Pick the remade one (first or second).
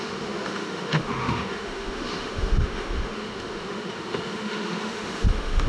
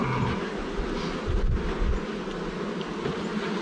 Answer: first